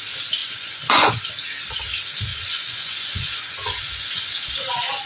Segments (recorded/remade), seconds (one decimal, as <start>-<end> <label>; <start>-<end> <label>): 0.0-0.4 recorded; 0.4-1.1 remade; 1.1-2.3 recorded; 2.3-4.5 remade; 4.5-5.1 recorded